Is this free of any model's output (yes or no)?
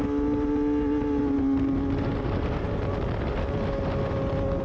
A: yes